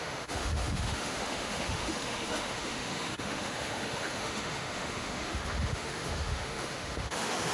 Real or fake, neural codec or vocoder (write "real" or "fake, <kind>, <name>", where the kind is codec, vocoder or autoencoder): fake, autoencoder, DAC-VAE